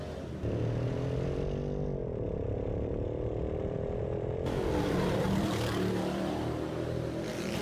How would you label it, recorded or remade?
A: remade